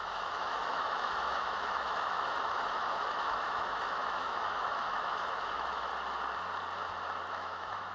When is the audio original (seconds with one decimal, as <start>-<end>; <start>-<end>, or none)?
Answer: 5.9-7.3